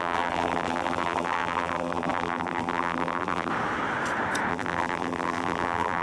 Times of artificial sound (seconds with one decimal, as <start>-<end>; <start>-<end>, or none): 0.0-3.5; 4.5-6.0